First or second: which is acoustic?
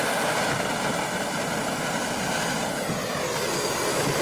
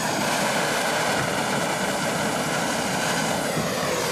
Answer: first